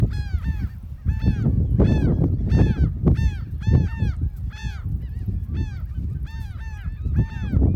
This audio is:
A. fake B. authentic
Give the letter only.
B